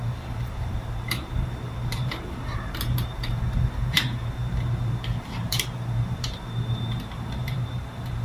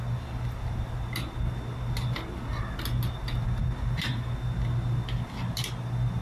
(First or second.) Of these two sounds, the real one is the second